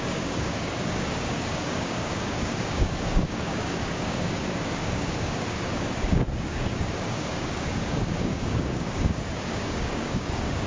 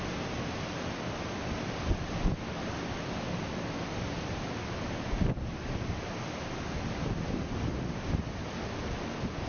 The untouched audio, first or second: second